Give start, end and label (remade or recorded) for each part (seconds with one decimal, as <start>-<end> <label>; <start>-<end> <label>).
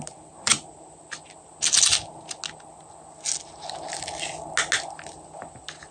0.0-5.9 recorded